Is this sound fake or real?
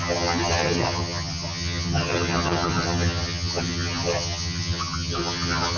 fake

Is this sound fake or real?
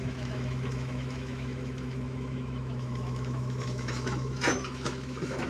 fake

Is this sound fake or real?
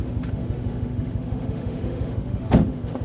fake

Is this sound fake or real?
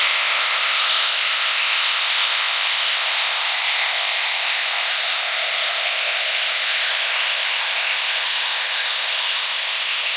fake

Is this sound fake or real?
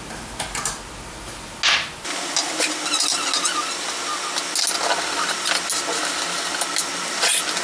real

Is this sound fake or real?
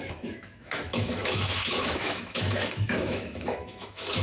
fake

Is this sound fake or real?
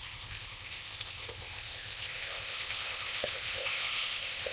fake